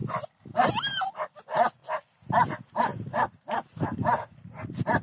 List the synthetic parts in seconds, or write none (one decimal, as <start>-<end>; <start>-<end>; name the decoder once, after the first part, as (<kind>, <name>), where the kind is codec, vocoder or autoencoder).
1.0-1.8 (vocoder, BigVGAN v2); 2.5-2.9; 4.3-5.0